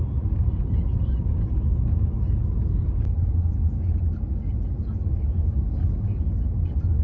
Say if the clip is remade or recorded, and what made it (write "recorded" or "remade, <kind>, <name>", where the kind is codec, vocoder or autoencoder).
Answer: recorded